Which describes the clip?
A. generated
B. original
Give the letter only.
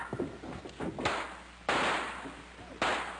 B